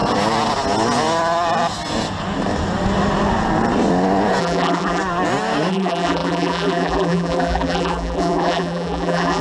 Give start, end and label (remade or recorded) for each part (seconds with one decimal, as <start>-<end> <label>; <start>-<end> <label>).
0.0-4.4 recorded; 4.4-5.0 remade; 5.0-5.7 recorded; 5.7-9.4 remade